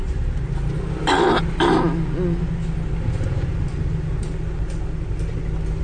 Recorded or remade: recorded